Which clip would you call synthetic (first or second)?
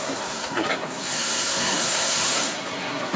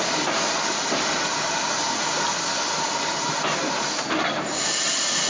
first